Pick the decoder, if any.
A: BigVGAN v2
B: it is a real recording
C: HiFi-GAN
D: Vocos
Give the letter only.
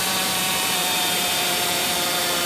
A